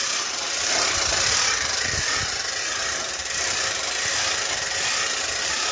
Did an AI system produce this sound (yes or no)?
yes